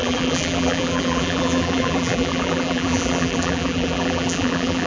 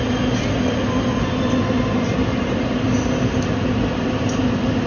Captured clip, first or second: second